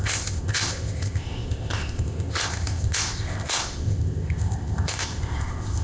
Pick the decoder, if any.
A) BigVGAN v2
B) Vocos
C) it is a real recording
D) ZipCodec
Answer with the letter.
D